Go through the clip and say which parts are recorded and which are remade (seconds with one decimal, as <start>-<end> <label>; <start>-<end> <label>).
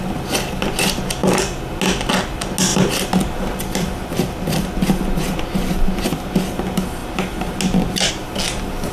0.0-8.9 recorded